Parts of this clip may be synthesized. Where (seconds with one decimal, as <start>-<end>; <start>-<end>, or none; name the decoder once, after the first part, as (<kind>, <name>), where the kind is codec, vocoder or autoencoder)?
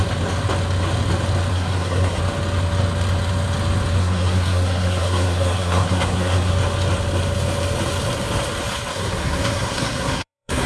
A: 1.5-2.2 (codec, SNAC); 4.0-6.5; 8.9-10.7